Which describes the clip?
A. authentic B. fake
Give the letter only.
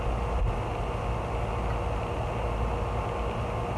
A